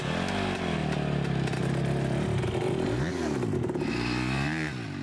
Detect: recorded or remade recorded